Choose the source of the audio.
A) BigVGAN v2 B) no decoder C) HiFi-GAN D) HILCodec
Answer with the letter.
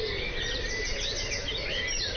B